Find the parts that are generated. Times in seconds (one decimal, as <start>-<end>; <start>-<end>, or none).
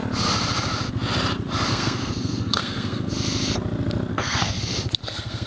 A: 1.7-3.1; 4.1-4.6; 5.0-5.5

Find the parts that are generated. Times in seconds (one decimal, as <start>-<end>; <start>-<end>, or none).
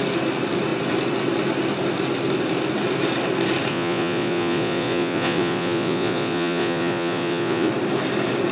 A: 3.7-7.7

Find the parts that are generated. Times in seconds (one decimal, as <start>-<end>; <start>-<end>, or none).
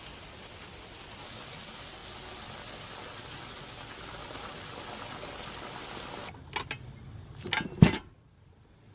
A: none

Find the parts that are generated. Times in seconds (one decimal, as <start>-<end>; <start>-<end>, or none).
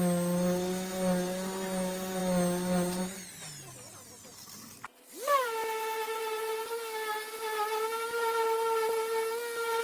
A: none